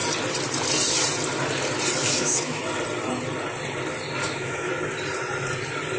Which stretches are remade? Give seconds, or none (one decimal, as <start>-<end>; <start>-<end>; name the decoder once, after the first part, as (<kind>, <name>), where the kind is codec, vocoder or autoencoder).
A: 2.0-2.6 (autoencoder, DAC-VAE); 4.2-4.7